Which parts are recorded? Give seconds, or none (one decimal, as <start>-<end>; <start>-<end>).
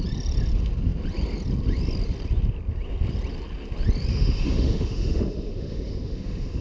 0.0-4.1